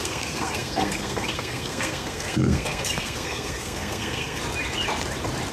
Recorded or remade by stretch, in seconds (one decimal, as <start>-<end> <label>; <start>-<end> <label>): 0.0-4.4 remade; 4.4-5.5 recorded